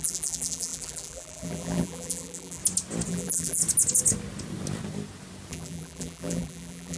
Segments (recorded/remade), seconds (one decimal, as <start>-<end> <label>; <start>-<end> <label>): 0.0-2.6 remade; 2.6-3.1 recorded; 3.1-3.6 remade; 3.6-5.5 recorded; 5.5-7.0 remade